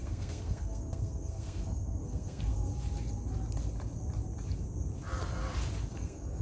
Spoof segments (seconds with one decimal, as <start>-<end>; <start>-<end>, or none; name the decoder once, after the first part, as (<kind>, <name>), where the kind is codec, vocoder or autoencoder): 0.0-2.7 (codec, SNAC); 5.9-6.4